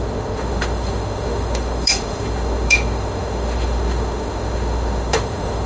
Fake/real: fake